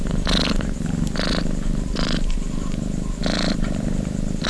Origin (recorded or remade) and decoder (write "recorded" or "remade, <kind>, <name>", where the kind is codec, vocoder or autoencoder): remade, vocoder, BigVGAN v2